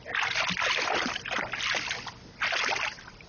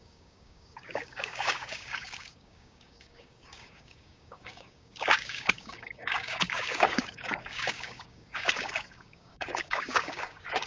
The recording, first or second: first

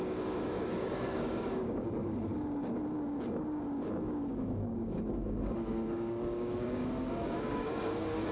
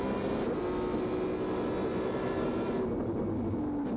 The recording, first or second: second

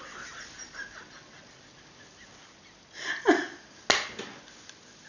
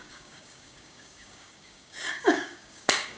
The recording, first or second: first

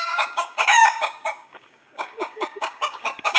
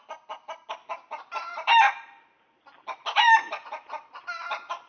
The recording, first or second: second